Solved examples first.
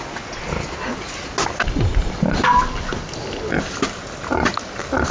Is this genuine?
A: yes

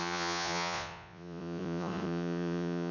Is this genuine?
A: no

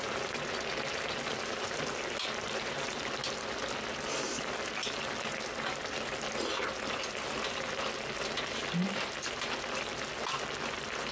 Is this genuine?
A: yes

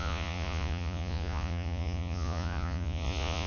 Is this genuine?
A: no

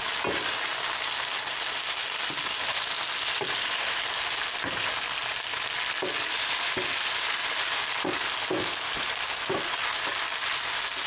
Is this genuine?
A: yes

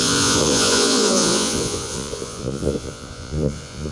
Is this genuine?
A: no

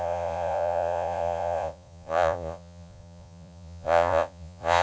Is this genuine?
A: no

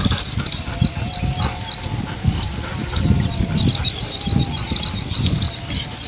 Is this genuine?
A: yes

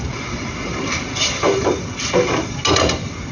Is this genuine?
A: yes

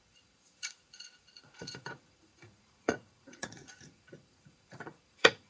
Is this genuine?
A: no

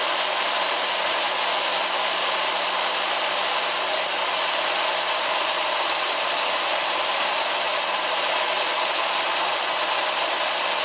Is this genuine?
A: yes